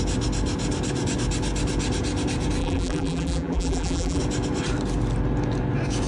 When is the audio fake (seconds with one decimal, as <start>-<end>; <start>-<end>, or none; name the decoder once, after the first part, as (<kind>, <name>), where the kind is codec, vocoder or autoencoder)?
2.6-4.2 (vocoder, BigVGAN v2)